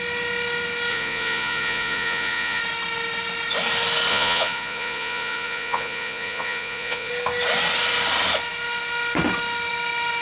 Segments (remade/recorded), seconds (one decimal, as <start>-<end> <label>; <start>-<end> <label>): 0.0-0.9 recorded; 0.9-2.6 remade; 2.6-4.1 recorded; 4.1-7.1 remade; 7.1-10.2 recorded